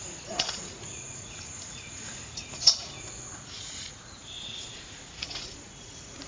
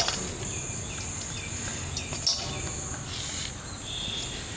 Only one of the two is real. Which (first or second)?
second